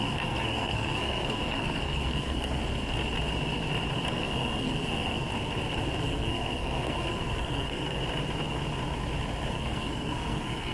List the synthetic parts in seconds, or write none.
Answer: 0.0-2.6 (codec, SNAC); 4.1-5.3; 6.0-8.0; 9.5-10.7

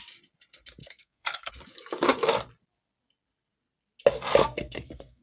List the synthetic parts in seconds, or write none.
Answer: 0.8-1.5 (codec, SNAC); 4.4-5.2

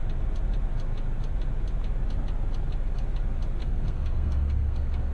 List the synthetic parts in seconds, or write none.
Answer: 3.6-5.1 (codec, SNAC)